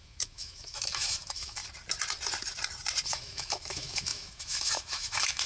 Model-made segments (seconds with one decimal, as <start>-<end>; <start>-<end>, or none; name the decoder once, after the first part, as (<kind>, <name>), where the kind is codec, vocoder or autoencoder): 0.0-1.6 (autoencoder, DAC-VAE); 3.1-5.5